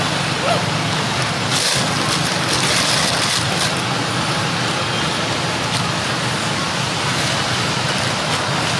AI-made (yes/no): no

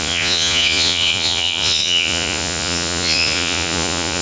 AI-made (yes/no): yes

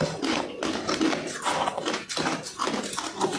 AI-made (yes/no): no